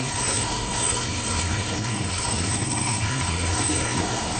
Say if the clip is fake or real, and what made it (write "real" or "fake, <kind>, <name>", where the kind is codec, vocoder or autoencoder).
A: fake, codec, SNAC